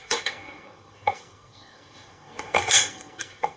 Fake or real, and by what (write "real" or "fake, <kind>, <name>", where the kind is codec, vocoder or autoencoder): fake, codec, SNAC